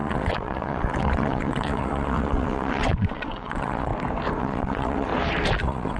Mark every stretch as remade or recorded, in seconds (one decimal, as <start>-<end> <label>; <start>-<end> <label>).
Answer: 0.0-3.9 remade; 3.9-4.4 recorded; 4.4-5.1 remade; 5.1-5.6 recorded; 5.6-6.0 remade